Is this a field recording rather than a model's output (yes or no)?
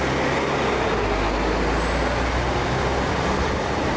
yes